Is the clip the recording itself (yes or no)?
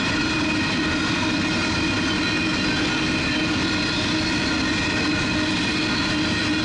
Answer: yes